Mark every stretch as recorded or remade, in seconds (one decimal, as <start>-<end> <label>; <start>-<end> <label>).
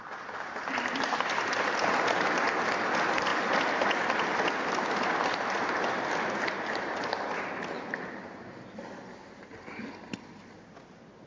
0.0-11.3 recorded